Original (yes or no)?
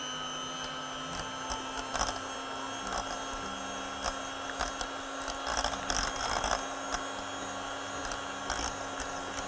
yes